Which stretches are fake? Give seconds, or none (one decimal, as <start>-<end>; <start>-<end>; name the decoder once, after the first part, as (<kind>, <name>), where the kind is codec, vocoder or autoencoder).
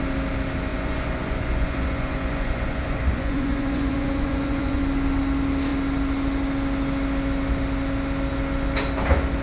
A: 0.7-4.8 (vocoder, Vocos)